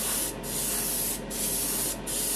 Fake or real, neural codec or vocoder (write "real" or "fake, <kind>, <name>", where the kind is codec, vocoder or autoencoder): real